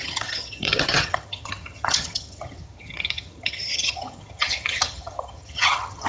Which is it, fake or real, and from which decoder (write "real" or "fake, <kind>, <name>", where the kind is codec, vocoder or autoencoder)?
fake, vocoder, HiFi-GAN